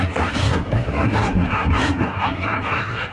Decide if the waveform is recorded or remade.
remade